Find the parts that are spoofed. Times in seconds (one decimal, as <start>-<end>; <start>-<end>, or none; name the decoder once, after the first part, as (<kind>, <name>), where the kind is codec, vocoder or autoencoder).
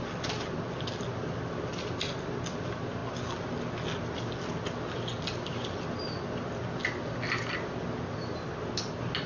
none